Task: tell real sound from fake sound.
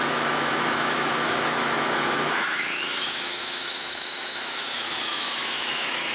fake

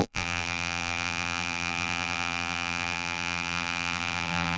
fake